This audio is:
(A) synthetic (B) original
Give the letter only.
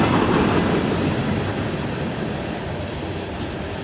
B